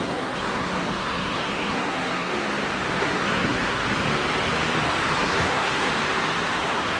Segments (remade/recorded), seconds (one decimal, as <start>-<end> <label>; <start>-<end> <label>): 0.0-2.3 remade; 2.3-3.0 recorded; 3.0-3.8 remade; 3.8-5.2 recorded; 5.2-5.9 remade; 5.9-6.6 recorded; 6.6-7.0 remade